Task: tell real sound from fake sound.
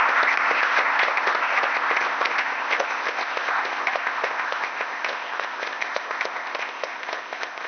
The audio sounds fake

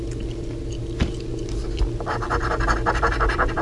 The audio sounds real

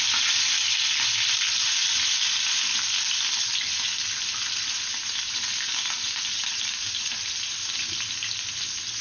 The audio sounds real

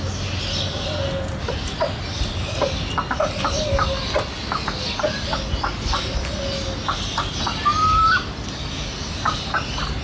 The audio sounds real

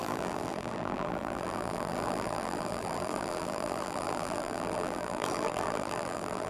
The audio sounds fake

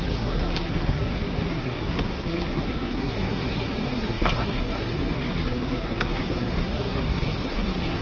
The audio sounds fake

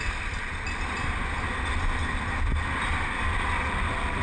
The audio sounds real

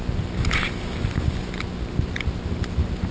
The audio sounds real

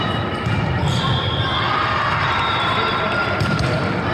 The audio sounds fake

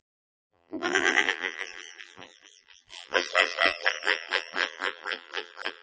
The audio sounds fake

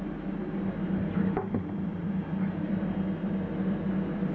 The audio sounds fake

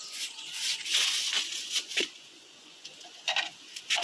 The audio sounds fake